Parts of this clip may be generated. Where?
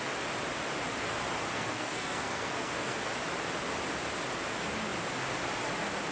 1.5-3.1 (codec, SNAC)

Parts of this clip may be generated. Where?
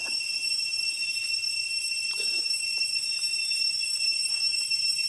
none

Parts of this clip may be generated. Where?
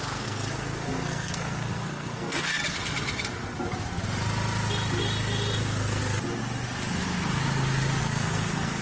0.0-2.6 (codec, SNAC); 5.6-6.0; 8.0-8.8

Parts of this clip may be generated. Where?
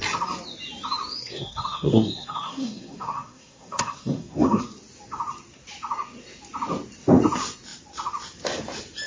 1.2-4.6 (codec, SNAC)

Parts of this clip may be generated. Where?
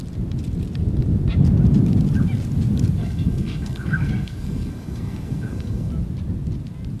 3.0-5.9 (codec, SNAC)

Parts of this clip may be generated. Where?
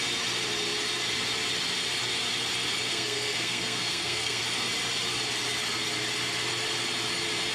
2.9-4.4 (codec, SNAC)